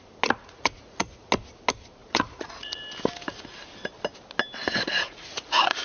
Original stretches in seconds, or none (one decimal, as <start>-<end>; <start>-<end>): 0.0-0.4; 1.3-2.0; 2.8-4.6